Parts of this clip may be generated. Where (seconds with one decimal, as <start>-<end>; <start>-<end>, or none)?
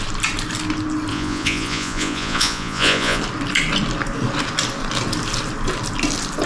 1.1-3.2